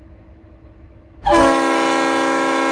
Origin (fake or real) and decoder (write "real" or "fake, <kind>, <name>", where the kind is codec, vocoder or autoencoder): fake, autoencoder, DAC-VAE